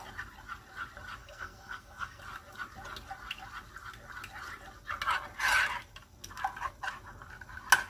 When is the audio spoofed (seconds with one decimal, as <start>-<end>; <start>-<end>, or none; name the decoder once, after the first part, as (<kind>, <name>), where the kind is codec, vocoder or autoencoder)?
1.2-2.2 (codec, SNAC)